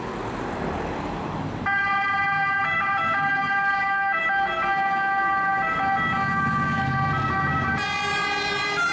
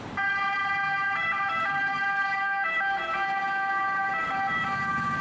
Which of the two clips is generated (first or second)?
second